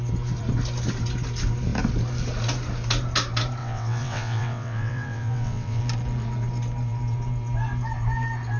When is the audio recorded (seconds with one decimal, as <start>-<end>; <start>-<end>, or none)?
0.0-3.6; 5.8-8.6